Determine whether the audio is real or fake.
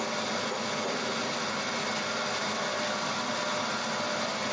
real